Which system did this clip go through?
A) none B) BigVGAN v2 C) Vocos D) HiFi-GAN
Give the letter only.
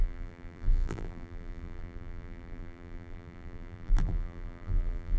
B